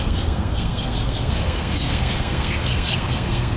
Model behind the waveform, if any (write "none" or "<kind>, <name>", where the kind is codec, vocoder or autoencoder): codec, SNAC